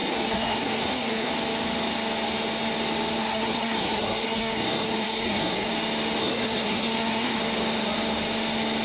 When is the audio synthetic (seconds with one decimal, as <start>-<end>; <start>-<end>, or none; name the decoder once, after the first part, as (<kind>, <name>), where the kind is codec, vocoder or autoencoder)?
0.0-1.3 (codec, SNAC); 3.2-5.7; 6.2-7.4